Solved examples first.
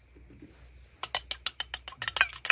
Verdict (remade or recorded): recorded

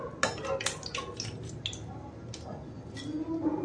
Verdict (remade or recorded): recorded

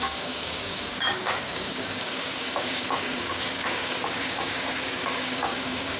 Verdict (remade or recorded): remade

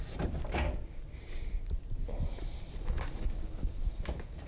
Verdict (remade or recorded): recorded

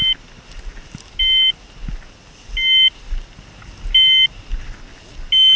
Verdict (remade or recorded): recorded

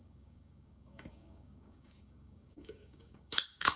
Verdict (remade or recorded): remade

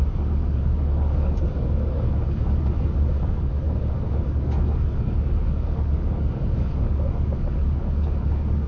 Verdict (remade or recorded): remade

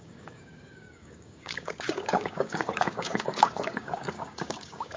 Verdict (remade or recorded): remade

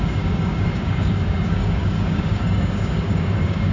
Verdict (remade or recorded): remade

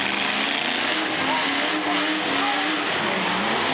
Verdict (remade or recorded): recorded